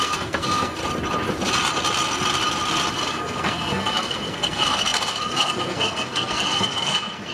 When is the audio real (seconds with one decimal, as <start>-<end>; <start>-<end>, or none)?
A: 0.8-3.1